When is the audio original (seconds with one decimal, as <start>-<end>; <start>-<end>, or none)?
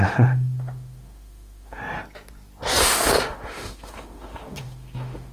1.8-2.8